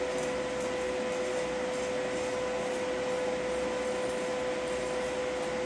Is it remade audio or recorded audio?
recorded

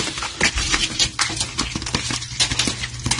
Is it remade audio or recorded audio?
recorded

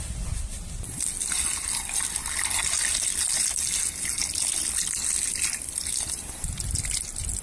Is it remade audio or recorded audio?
recorded